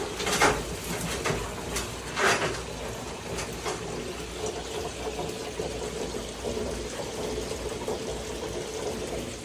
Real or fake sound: real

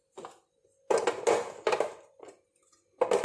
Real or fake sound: real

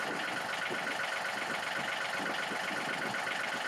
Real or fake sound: real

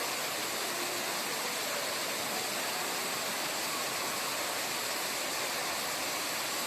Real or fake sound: real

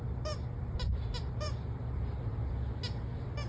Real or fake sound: fake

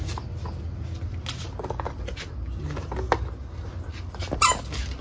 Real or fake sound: real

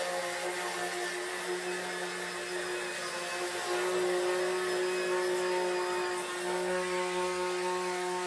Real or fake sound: real